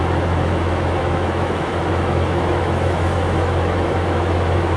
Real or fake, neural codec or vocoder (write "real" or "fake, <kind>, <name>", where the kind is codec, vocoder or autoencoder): fake, autoencoder, DAC-VAE